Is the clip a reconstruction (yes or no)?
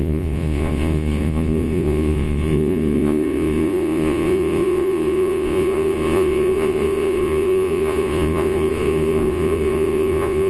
yes